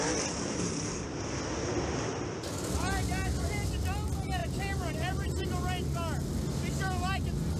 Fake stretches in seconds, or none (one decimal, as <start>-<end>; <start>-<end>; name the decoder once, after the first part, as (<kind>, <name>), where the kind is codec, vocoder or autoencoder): none